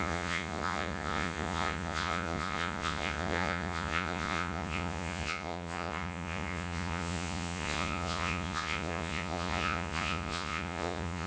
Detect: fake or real fake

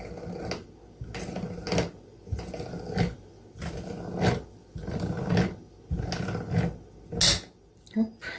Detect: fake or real real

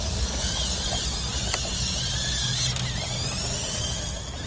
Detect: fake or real real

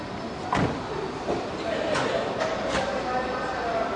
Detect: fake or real real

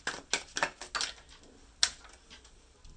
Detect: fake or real real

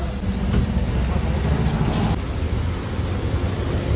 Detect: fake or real real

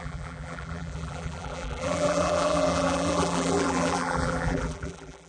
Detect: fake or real fake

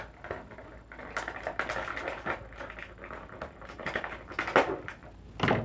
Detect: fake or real real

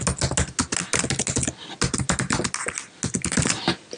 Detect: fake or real real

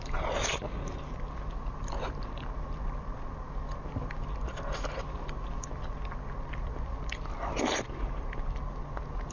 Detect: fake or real real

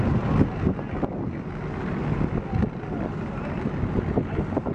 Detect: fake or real real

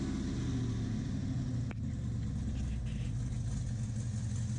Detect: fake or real real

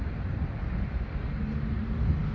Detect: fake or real real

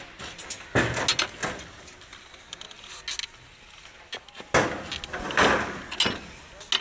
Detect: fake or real real